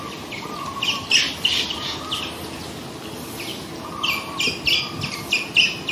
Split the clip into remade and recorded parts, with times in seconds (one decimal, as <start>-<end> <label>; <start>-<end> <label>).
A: 0.0-5.9 recorded